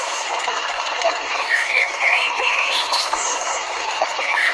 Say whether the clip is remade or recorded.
remade